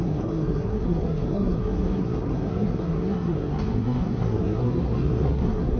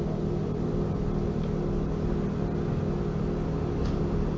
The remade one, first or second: first